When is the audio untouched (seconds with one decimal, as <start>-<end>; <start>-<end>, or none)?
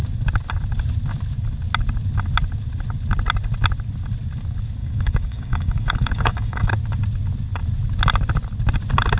0.0-4.8; 6.7-9.2